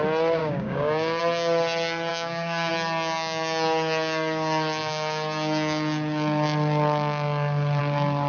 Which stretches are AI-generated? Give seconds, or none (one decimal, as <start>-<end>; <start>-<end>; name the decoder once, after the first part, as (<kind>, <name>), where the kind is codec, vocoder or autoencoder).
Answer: 0.4-1.2 (codec, DAC); 2.1-2.7